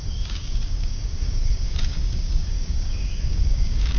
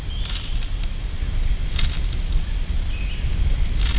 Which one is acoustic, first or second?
second